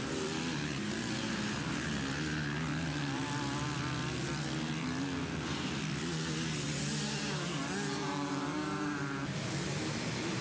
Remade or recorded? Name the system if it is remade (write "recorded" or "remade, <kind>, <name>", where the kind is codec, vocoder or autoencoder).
recorded